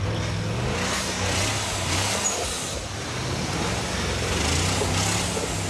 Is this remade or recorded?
recorded